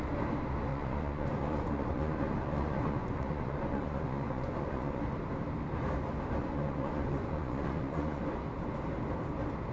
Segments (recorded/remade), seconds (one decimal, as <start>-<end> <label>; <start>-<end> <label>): 0.0-0.7 recorded; 0.7-5.0 remade; 5.0-6.4 recorded; 6.4-8.2 remade; 8.2-9.7 recorded